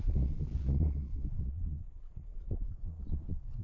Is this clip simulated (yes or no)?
yes